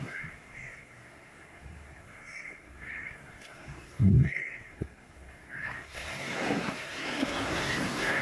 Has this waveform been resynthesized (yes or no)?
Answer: yes